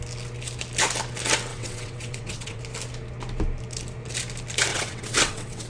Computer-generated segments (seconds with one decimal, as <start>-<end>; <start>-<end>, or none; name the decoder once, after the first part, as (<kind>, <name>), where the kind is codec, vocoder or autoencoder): 1.5-2.6 (vocoder, WaveNeXt); 4.7-5.7